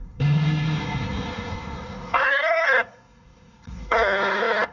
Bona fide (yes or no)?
no